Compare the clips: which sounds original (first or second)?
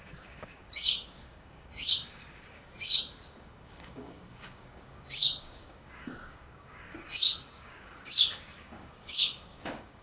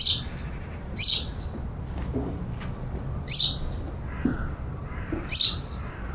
second